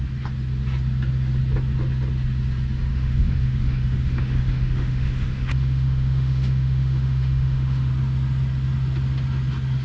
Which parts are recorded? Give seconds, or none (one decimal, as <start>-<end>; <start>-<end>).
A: 0.0-2.9; 7.9-9.8